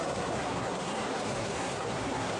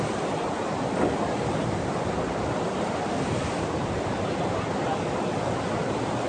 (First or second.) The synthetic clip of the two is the first